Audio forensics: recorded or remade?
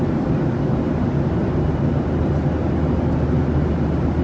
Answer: recorded